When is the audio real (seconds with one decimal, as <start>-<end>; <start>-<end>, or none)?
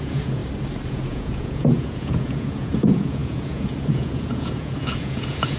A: 0.4-0.9